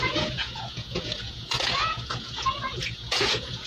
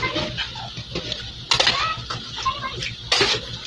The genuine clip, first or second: second